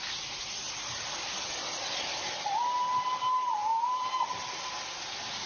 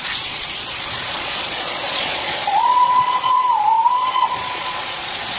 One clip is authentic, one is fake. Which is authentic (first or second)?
first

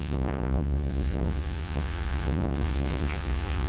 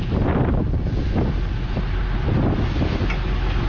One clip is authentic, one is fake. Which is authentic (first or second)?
second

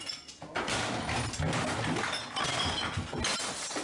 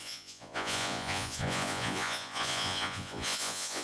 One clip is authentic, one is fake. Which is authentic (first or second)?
first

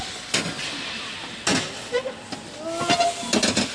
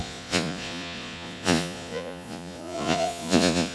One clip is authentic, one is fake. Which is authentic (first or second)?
first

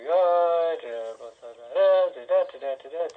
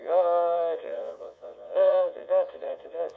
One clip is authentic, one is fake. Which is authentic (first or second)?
first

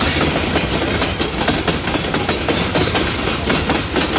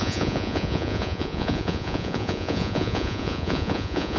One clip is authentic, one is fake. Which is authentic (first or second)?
first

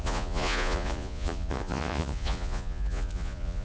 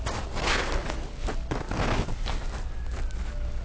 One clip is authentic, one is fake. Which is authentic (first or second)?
second